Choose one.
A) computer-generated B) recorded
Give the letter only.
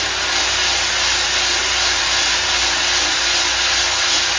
B